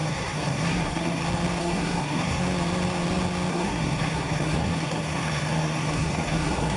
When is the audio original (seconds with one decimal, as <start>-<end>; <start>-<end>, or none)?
1.2-1.6; 2.4-3.5